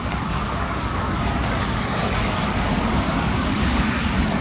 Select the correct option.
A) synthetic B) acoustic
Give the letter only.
A